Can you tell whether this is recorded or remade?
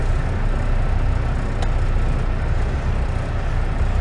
recorded